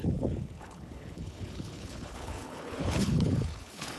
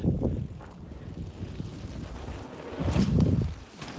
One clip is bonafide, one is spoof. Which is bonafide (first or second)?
second